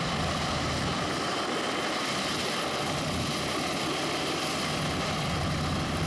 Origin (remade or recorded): remade